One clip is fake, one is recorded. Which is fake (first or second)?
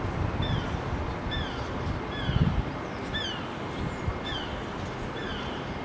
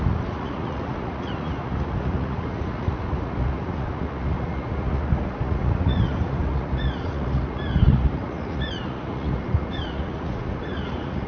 second